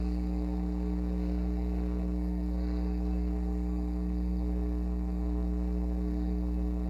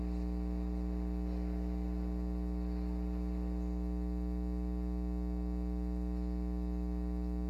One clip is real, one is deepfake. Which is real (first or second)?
second